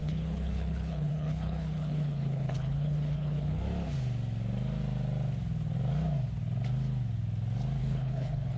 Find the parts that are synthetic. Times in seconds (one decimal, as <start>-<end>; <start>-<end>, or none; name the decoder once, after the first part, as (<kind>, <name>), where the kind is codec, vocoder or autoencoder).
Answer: 0.0-3.6 (codec, HILCodec); 7.8-8.6